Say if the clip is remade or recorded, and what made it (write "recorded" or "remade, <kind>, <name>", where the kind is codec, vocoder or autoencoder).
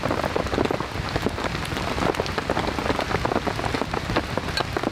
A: recorded